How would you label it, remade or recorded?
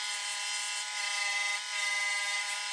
recorded